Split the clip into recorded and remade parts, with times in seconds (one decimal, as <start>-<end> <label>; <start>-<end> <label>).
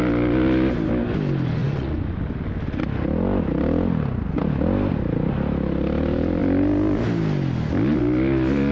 0.0-1.6 recorded; 1.6-2.2 remade; 2.2-8.7 recorded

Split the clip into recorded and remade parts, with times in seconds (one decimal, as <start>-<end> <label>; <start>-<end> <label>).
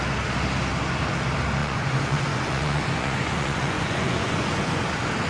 0.0-1.6 recorded; 1.6-4.8 remade; 4.8-5.3 recorded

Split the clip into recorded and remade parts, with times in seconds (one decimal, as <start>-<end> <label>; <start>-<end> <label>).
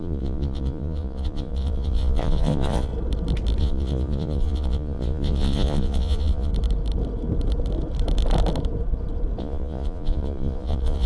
0.0-2.9 remade; 2.9-3.6 recorded; 3.6-6.5 remade; 6.5-9.4 recorded; 9.4-11.1 remade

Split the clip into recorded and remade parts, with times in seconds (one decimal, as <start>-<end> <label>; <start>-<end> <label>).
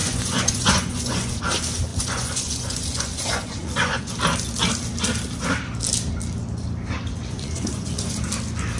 0.0-1.4 remade; 1.4-1.9 recorded; 1.9-4.1 remade; 4.1-7.2 recorded; 7.2-8.3 remade; 8.3-8.8 recorded